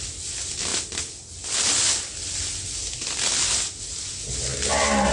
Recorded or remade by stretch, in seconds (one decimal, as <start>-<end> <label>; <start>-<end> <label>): 0.0-5.1 recorded